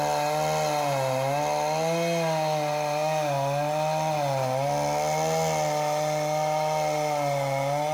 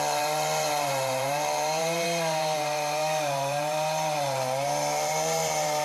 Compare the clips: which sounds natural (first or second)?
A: first